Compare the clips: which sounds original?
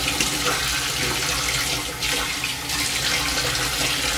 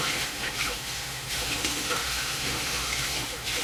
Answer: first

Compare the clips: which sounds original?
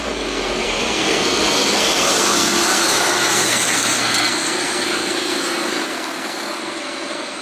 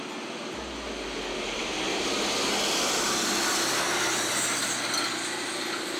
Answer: second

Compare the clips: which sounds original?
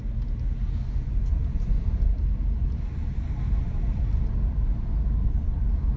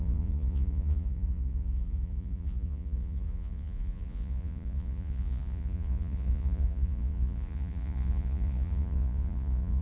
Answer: first